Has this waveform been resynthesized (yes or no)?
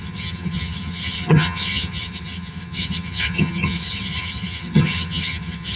yes